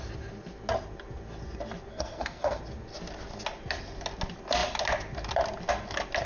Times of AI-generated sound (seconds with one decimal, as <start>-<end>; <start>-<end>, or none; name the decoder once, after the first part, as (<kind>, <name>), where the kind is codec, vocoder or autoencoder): 1.9-2.6 (codec, SNAC)